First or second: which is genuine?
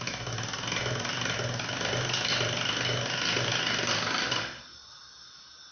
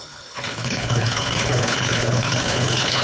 first